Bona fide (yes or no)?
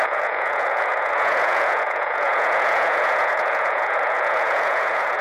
no